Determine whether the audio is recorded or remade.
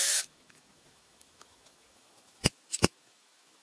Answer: remade